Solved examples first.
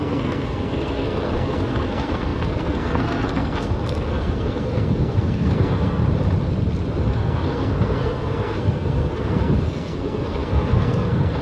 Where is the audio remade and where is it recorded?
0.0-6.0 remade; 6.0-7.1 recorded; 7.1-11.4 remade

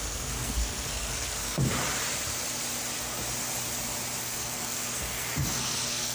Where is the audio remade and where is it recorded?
0.0-1.6 remade; 1.6-4.2 recorded; 4.2-6.1 remade

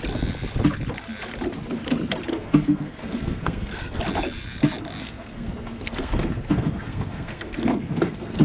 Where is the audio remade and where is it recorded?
0.0-2.3 recorded; 2.3-4.0 remade; 4.0-5.0 recorded; 5.0-8.4 remade

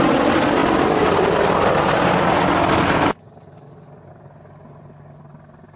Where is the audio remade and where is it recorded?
0.0-5.8 recorded

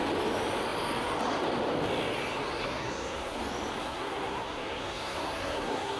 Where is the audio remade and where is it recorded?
0.0-2.6 recorded; 2.6-3.4 remade; 3.4-3.8 recorded; 3.8-6.0 remade

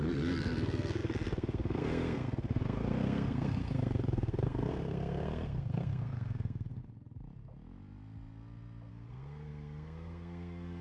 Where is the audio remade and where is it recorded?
0.0-6.8 remade; 6.8-8.9 recorded; 8.9-10.8 remade